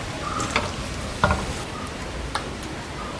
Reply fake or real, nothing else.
real